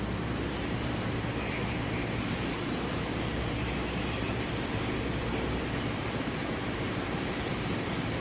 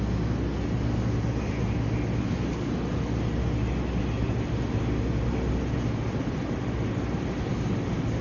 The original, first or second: second